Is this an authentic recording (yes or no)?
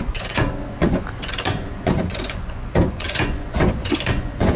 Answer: no